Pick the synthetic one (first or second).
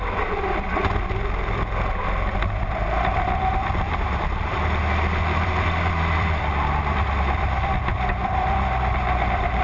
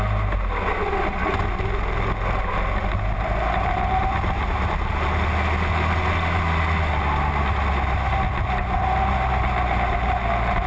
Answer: first